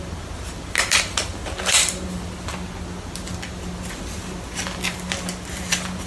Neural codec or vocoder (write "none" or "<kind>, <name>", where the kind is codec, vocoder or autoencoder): none